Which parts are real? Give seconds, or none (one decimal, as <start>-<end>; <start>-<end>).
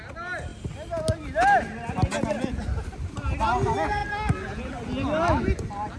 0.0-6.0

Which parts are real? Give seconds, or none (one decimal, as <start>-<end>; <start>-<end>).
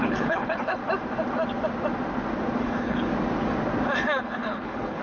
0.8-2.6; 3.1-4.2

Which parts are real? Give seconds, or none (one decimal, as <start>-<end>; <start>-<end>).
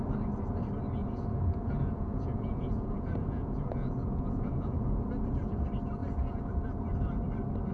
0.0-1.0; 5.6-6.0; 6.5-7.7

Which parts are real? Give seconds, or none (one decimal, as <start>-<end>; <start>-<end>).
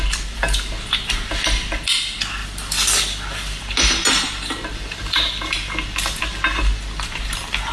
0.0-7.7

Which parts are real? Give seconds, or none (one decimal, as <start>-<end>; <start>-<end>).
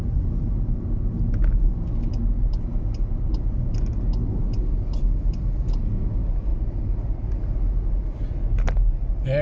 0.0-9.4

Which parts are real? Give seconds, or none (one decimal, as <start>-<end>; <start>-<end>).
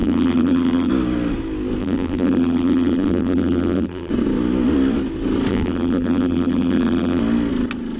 0.9-1.8; 4.1-5.5; 7.2-8.0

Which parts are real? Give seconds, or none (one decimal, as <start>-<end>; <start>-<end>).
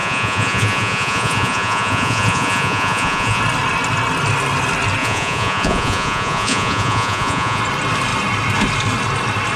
3.4-5.0; 7.6-9.6